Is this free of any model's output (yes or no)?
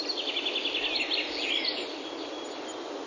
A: yes